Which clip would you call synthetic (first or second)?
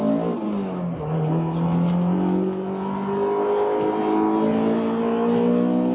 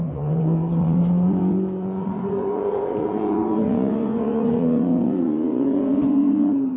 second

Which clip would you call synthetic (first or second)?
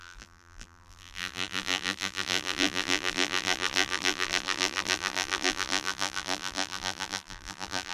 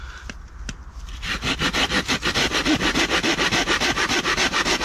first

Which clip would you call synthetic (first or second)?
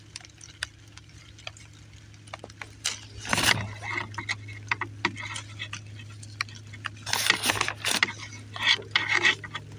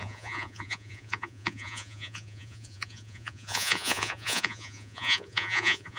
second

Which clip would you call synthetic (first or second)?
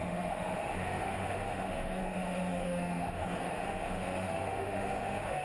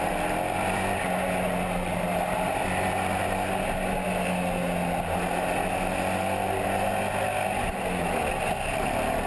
first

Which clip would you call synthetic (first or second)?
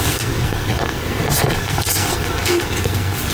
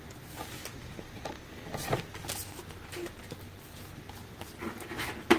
first